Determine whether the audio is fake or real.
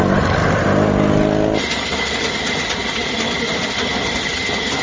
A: real